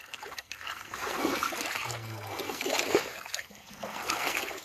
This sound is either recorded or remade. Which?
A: remade